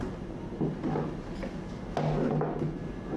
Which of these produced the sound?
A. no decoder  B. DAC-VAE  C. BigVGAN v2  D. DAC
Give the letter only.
A